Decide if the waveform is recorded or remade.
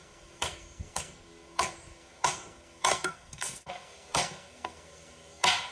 remade